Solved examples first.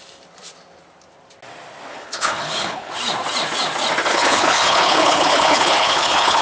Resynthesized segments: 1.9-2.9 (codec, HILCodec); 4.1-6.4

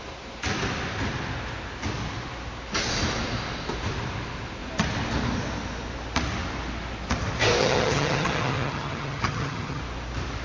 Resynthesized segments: 7.6-9.8 (vocoder, HiFi-GAN)